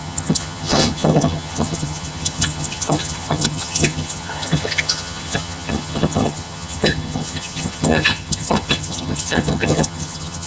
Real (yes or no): no